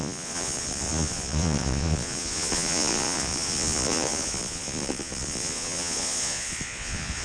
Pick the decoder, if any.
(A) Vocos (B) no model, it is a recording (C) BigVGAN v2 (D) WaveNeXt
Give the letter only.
A